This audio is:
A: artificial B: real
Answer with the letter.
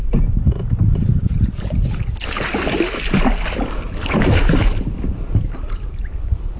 B